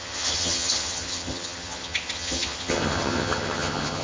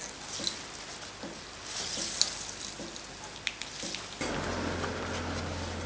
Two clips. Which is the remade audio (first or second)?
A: first